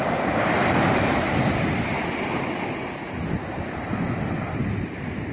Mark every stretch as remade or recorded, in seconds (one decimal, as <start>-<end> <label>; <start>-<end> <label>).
0.0-5.3 recorded